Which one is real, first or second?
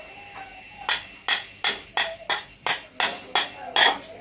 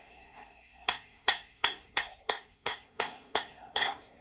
first